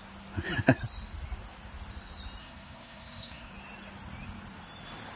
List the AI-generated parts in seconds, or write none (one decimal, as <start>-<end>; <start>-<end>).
2.4-3.5